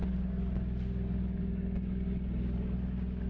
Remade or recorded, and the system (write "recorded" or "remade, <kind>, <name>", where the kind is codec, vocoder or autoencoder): recorded